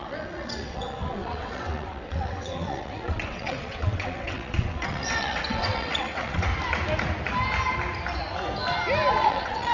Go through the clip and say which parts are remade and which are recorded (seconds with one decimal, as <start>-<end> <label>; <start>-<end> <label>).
0.0-6.5 remade; 6.5-9.1 recorded; 9.1-9.7 remade